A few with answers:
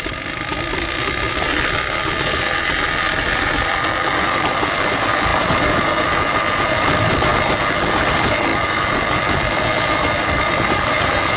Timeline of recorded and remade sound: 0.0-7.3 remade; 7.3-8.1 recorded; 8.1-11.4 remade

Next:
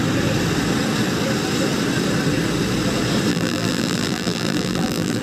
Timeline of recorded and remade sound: 0.0-3.3 recorded; 3.3-5.2 remade

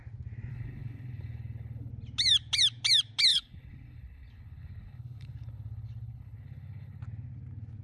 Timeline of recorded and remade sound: 0.0-0.5 recorded; 0.5-1.9 remade; 1.9-3.3 recorded; 3.3-7.0 remade; 7.0-7.8 recorded

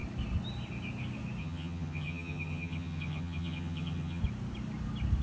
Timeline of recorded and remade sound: 0.0-1.4 recorded; 1.4-4.2 remade; 4.2-5.2 recorded